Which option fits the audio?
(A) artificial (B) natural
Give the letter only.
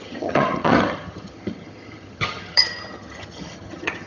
A